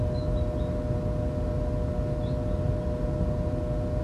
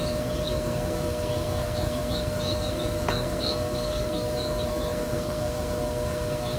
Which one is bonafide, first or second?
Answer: first